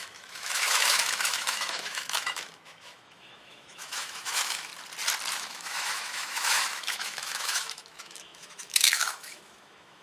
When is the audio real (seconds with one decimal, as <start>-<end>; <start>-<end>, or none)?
4.7-5.3